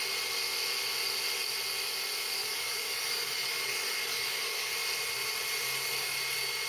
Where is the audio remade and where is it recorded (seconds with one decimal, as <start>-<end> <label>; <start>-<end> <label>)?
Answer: 0.0-2.4 recorded; 2.4-4.7 remade; 4.7-6.7 recorded